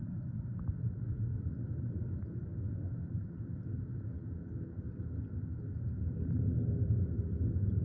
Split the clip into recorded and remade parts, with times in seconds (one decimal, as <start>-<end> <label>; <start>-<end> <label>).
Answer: 0.0-7.8 recorded